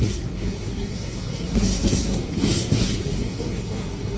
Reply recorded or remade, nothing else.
remade